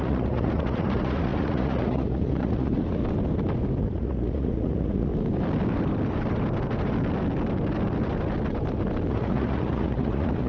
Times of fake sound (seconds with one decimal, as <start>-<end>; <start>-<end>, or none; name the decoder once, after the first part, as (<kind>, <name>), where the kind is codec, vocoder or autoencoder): 0.0-3.0 (vocoder, Vocos); 3.8-5.1; 9.1-10.5